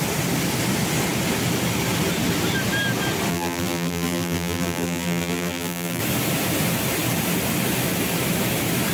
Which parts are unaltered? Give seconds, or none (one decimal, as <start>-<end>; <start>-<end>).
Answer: 0.0-3.3; 6.0-8.9